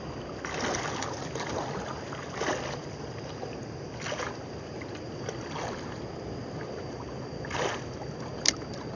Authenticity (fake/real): real